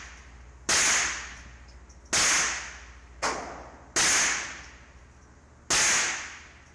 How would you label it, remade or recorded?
recorded